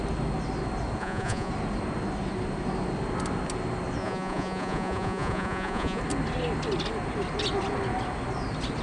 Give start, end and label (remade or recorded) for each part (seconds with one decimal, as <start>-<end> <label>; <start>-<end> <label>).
0.0-1.0 recorded; 1.0-1.5 remade; 1.5-4.0 recorded; 4.0-6.0 remade; 6.0-8.8 recorded